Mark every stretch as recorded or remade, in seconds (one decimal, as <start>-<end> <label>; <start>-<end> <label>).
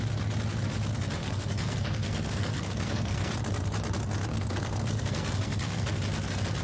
0.0-1.2 recorded; 1.2-3.3 remade; 3.3-4.3 recorded; 4.3-6.0 remade; 6.0-6.6 recorded